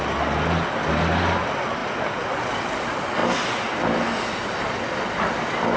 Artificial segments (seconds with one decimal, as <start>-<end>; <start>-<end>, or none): none